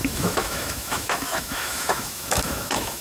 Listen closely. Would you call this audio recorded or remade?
remade